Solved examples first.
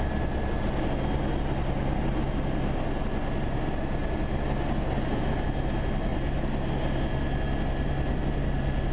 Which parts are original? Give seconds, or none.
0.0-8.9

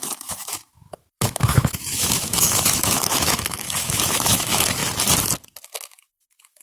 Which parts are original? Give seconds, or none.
4.8-5.6

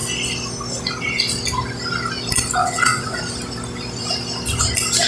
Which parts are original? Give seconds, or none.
0.0-2.6; 3.2-5.1

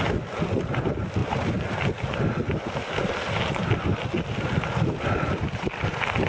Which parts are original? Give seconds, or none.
0.0-6.3

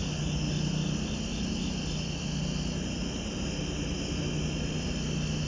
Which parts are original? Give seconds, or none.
0.0-5.5